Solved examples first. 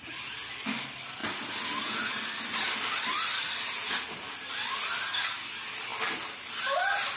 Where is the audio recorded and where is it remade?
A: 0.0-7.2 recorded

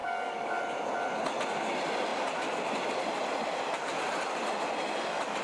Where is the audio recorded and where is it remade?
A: 0.0-0.6 remade; 0.6-5.4 recorded